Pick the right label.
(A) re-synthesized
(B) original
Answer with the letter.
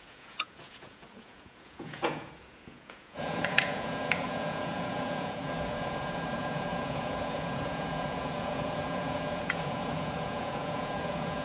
A